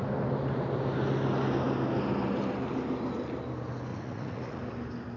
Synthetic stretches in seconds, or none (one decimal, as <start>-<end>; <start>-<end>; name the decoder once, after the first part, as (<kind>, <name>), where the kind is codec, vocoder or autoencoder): 3.9-4.6 (vocoder, Vocos)